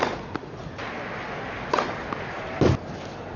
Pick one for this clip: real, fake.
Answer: real